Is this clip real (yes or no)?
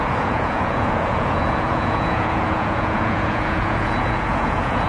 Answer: no